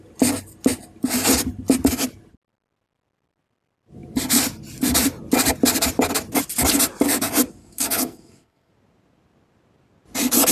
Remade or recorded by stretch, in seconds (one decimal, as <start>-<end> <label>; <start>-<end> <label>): 0.0-7.6 recorded; 7.6-8.7 remade; 8.7-10.5 recorded